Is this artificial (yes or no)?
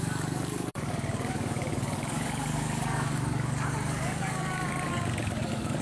yes